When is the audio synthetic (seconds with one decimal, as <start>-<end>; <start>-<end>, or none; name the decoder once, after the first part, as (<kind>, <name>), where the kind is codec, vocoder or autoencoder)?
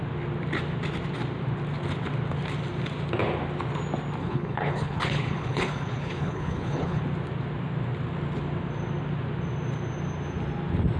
4.2-7.0 (codec, HILCodec)